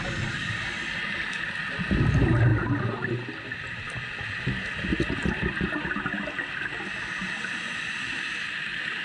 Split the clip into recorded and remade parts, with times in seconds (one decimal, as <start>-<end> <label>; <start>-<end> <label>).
0.0-9.0 recorded